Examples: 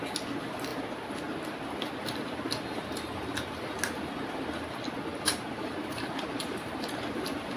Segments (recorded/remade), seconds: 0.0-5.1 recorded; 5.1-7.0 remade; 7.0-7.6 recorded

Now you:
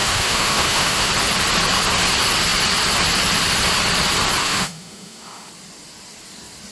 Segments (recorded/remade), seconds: 0.0-1.1 remade; 1.1-4.4 recorded; 4.4-5.5 remade; 5.5-6.7 recorded

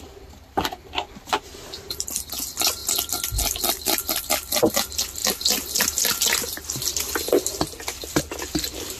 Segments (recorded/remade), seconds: 0.0-9.0 recorded

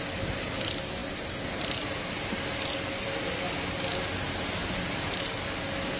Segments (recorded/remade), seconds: 0.0-1.0 recorded; 1.0-2.4 remade; 2.4-4.6 recorded; 4.6-5.5 remade; 5.5-6.0 recorded

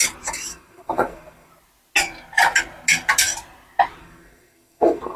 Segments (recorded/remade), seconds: 0.0-0.5 recorded; 0.5-1.5 remade; 1.5-4.0 recorded; 4.0-5.2 remade